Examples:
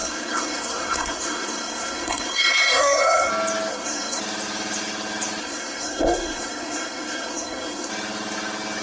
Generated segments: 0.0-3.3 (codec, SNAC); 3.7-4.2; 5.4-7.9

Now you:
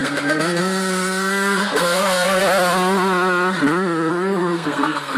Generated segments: 0.0-2.4 (codec, SNAC); 4.1-5.2

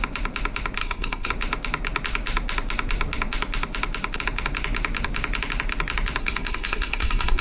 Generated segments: 0.8-1.3 (codec, SNAC); 6.2-7.4

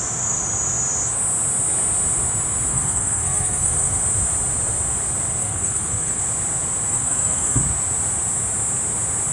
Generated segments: 2.7-4.0 (codec, SNAC); 5.4-6.2; 6.9-7.6

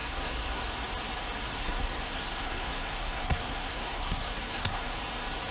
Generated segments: 0.0-0.6 (codec, SNAC); 1.6-4.9

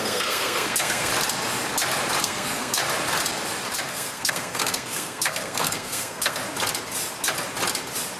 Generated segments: 0.0-1.1 (codec, SNAC); 2.2-2.8; 3.9-6.4